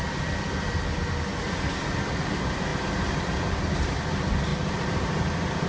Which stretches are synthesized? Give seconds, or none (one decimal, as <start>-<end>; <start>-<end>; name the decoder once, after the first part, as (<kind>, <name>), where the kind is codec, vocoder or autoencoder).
none